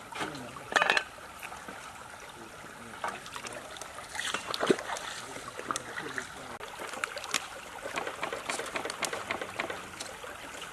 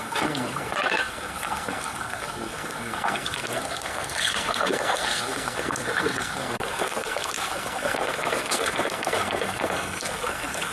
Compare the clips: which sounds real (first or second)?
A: first